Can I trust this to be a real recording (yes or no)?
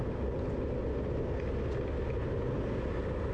yes